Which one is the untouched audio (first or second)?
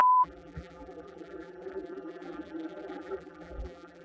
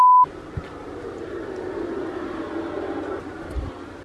second